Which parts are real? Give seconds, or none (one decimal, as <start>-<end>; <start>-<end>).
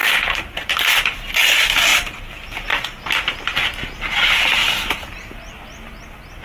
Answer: 1.3-1.9; 3.3-6.4